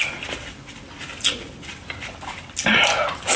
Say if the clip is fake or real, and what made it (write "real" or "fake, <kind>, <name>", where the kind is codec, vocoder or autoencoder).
real